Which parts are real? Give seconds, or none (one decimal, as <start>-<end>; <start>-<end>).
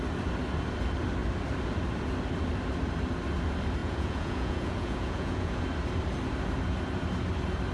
0.0-3.8; 5.6-7.7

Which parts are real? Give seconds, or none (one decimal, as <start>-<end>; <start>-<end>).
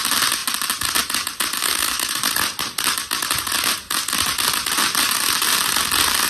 0.0-1.6; 2.3-6.3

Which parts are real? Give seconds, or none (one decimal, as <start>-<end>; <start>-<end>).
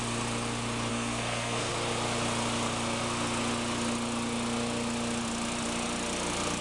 0.0-0.9; 1.7-6.6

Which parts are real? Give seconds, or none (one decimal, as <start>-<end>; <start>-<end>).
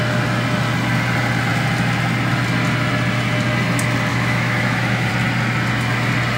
0.0-4.1; 5.1-6.4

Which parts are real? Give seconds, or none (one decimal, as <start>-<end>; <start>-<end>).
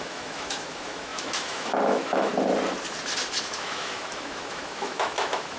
2.3-3.4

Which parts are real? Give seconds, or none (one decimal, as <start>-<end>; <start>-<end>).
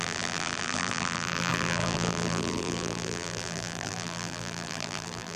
none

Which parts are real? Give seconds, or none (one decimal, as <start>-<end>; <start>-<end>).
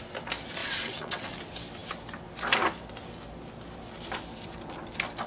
0.0-0.6; 1.4-5.3